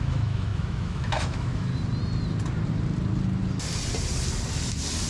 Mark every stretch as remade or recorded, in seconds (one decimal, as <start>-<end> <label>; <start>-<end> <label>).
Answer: 0.0-1.7 remade; 1.7-5.1 recorded